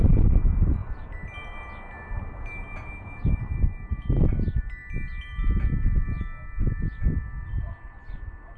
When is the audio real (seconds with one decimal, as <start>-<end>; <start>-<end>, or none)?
none